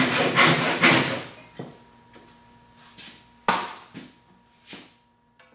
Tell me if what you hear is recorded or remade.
recorded